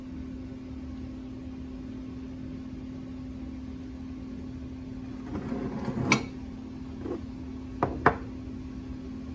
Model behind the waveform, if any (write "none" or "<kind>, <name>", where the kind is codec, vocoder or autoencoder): none